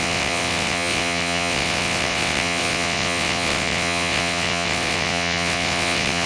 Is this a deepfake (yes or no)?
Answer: yes